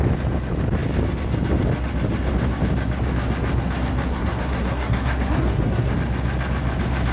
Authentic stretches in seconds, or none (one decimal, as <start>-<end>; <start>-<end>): 0.0-4.1; 5.9-7.1